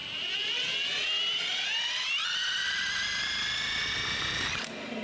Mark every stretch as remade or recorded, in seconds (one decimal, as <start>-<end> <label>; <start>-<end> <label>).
0.0-5.0 recorded